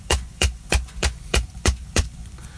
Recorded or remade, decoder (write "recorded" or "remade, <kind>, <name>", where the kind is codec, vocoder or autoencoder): remade, vocoder, Vocos